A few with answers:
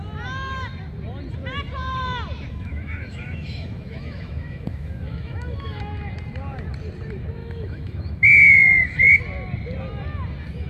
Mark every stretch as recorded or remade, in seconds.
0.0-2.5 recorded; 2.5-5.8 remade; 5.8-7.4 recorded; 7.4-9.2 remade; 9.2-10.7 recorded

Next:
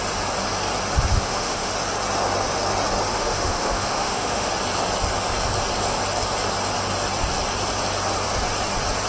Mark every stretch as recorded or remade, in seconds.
0.0-1.1 recorded; 1.1-1.7 remade; 1.7-3.1 recorded; 3.1-4.5 remade; 4.5-9.1 recorded

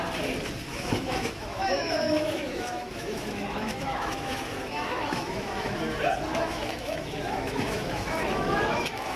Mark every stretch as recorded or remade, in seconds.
0.0-0.7 recorded; 0.7-5.8 remade; 5.8-6.3 recorded; 6.3-9.2 remade